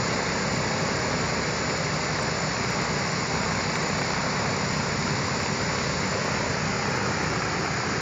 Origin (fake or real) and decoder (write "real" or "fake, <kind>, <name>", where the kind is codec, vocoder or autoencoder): real